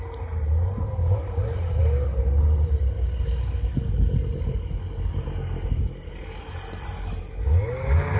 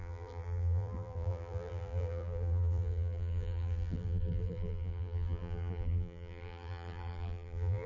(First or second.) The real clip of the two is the first